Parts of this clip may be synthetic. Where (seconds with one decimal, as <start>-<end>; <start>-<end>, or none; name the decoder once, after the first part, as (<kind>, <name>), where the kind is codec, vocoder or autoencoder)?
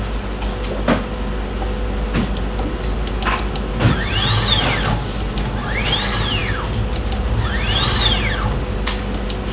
none